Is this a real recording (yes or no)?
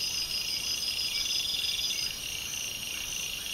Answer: yes